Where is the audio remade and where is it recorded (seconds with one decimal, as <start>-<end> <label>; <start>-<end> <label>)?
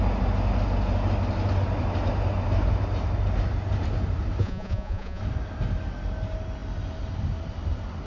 0.0-4.4 recorded; 4.4-5.2 remade; 5.2-8.1 recorded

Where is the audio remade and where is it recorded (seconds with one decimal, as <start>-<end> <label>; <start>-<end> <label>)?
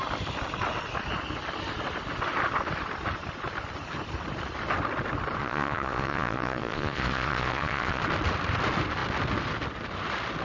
0.0-5.4 recorded; 5.4-8.0 remade; 8.0-10.4 recorded